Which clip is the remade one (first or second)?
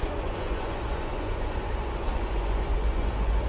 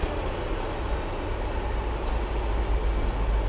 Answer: first